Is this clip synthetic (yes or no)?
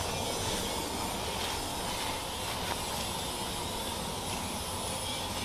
no